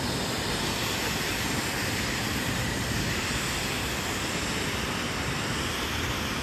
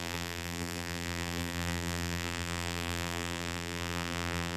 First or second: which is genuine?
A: first